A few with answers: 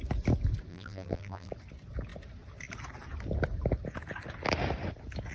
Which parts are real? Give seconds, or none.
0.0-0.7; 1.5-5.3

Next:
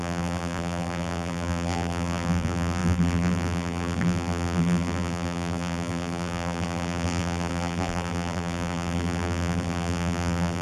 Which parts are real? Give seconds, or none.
none

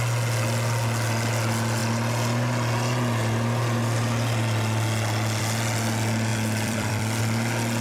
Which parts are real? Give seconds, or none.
0.0-6.3; 7.2-7.8

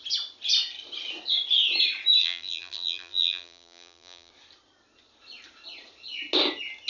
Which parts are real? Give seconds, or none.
0.0-2.2; 4.3-6.9

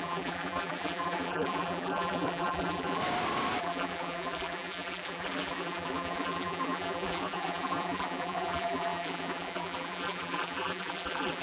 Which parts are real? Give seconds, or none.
3.0-3.6

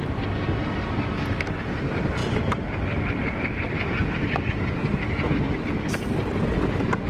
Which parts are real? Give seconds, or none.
0.0-7.1

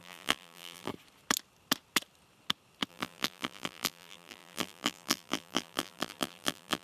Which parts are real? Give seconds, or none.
0.9-2.9